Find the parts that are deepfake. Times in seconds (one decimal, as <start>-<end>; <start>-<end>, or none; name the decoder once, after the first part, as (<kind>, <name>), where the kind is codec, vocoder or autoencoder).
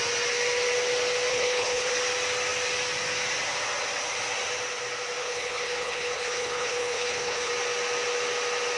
1.3-1.9 (codec, HILCodec); 5.2-7.5